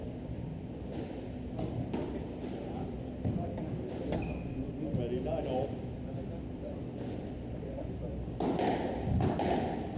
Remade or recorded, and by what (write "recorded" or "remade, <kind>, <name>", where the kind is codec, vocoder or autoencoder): recorded